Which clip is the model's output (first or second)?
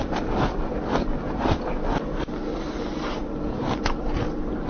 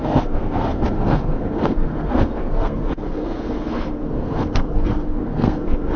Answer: second